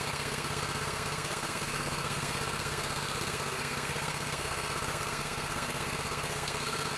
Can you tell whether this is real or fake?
fake